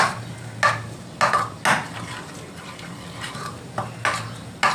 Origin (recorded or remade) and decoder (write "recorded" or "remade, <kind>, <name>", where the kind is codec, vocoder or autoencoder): recorded